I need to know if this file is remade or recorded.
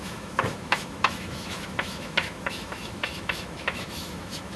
remade